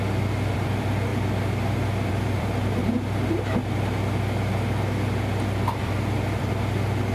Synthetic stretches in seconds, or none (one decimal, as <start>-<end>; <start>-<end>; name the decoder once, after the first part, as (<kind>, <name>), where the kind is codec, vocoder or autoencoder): 0.0-1.1 (vocoder, BigVGAN v2); 2.1-2.8; 5.8-7.1